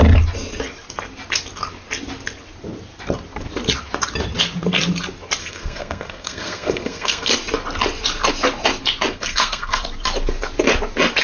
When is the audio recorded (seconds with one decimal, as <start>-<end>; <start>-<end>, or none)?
0.0-5.4; 7.3-9.1; 9.8-11.2